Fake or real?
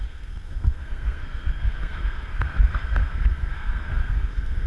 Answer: fake